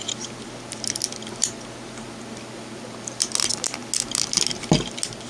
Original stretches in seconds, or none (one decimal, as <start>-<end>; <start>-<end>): 0.0-5.3